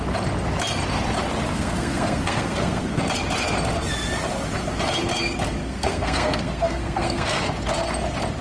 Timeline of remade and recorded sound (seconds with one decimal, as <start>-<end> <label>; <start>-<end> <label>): 0.0-1.5 recorded; 1.5-3.0 remade; 3.0-5.6 recorded; 5.6-7.4 remade; 7.4-8.4 recorded